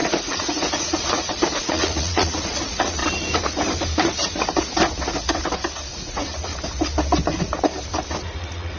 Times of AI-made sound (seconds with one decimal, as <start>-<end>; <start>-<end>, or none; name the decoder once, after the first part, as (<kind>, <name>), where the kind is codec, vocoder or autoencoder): 0.0-3.0 (vocoder, Vocos); 5.9-6.5; 8.2-8.8